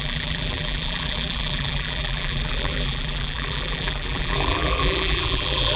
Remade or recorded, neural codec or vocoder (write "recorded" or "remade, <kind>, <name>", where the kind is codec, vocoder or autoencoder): remade, vocoder, BigVGAN v2